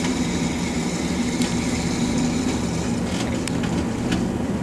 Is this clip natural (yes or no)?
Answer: yes